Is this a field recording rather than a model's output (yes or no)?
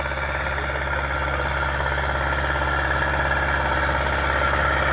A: yes